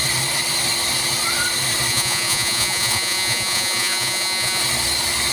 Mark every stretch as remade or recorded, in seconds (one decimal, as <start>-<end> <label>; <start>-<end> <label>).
0.0-1.9 recorded; 1.9-4.6 remade; 4.6-5.3 recorded